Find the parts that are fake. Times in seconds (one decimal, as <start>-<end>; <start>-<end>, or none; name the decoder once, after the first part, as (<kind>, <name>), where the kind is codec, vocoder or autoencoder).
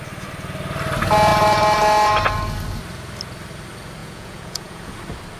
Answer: 4.0-4.9 (vocoder, Vocos)